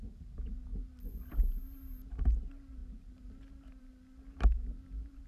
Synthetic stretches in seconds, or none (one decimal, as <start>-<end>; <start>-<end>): none